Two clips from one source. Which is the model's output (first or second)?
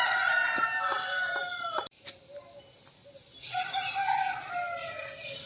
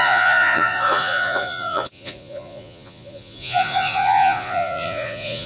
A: second